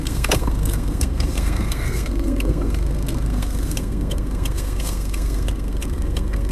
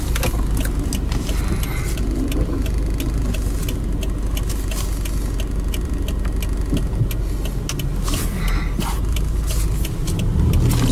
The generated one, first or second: first